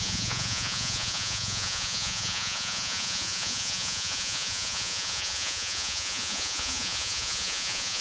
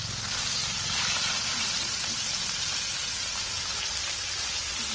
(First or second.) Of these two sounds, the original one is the second